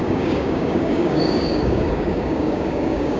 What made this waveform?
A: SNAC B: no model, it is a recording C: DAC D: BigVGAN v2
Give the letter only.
C